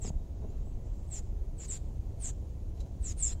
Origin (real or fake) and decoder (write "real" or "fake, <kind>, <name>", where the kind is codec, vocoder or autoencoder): fake, vocoder, Vocos